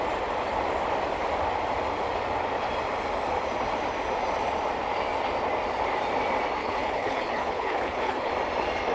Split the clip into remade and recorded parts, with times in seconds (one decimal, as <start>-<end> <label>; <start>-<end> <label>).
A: 0.0-6.6 recorded; 6.6-8.3 remade; 8.3-8.9 recorded